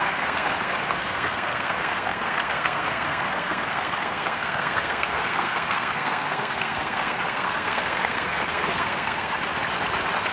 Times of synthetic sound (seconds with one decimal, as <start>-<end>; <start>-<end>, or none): 0.0-9.3